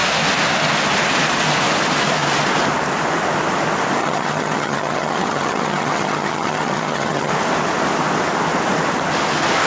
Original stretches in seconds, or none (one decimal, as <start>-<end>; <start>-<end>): 0.0-4.0; 7.3-9.7